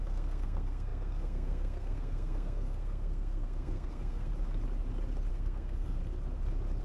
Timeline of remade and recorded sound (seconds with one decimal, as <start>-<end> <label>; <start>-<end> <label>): 0.0-4.3 remade; 4.3-5.3 recorded; 5.3-6.0 remade; 6.0-6.8 recorded